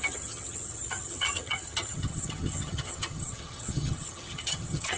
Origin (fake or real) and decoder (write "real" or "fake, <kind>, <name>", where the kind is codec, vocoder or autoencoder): fake, vocoder, HiFi-GAN